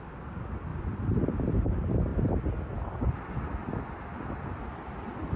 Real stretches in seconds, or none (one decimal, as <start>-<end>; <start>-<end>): 0.0-5.4

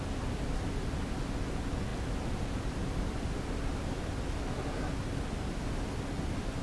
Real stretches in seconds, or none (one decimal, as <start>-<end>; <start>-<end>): 0.0-2.8; 3.4-6.6

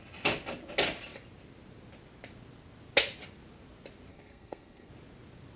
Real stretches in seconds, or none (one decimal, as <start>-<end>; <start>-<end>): 0.0-4.1; 4.9-5.6

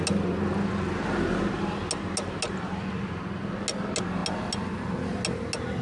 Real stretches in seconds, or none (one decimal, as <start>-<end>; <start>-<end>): 0.0-5.8

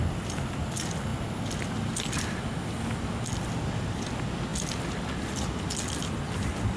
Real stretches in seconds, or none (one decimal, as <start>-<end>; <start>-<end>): 0.0-6.8

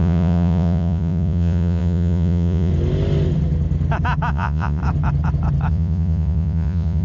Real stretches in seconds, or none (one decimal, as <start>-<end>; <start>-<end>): 2.7-4.3; 4.8-5.7

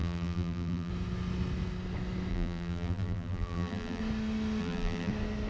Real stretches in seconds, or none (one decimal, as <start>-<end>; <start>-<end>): 0.9-2.3; 4.0-4.6; 5.1-5.5